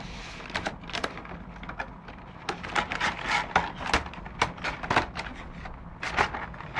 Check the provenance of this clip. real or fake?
real